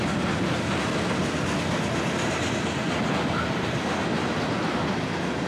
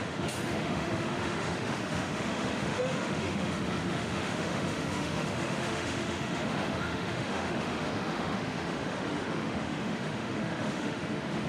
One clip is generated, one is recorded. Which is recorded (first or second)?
first